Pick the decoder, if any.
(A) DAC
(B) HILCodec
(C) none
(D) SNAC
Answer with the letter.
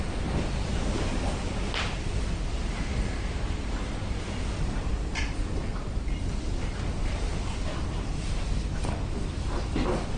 C